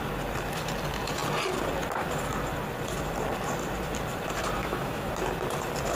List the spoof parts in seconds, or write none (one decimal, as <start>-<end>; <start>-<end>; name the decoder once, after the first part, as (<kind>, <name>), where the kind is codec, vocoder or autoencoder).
4.6-5.1 (autoencoder, DAC-VAE)